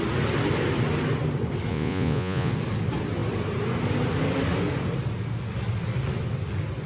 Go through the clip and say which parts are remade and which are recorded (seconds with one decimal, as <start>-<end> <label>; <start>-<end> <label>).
0.0-1.7 recorded; 1.7-2.5 remade; 2.5-6.9 recorded